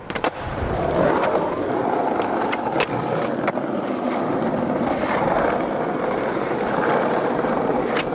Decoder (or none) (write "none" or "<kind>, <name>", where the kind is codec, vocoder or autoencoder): none